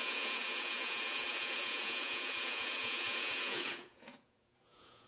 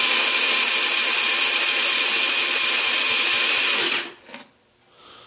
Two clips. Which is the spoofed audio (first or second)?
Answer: first